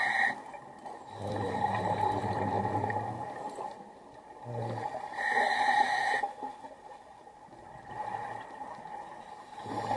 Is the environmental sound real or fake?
real